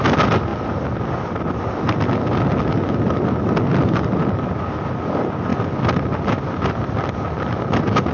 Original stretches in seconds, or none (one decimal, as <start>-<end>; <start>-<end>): 0.0-8.1